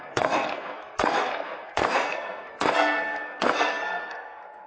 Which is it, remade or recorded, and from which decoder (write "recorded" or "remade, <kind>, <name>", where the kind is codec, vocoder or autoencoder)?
remade, codec, SNAC